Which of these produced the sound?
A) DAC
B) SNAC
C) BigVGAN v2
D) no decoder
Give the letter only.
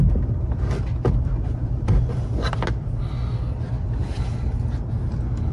D